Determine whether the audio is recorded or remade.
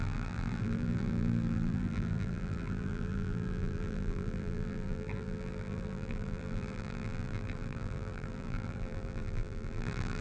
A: remade